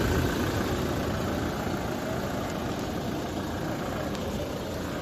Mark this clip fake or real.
real